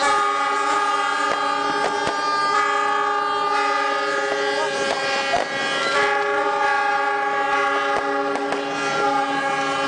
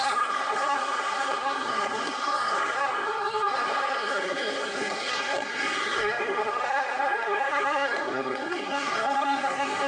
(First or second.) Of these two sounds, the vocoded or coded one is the second